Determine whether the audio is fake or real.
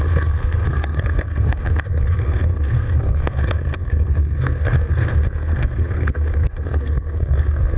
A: fake